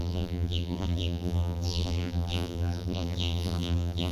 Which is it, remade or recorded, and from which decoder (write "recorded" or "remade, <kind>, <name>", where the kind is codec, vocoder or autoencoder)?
remade, vocoder, BigVGAN v2